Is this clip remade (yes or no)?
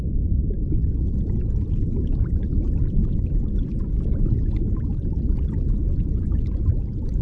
yes